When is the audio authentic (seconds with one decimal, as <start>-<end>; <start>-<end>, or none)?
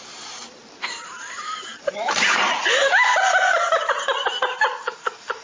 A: 0.6-1.2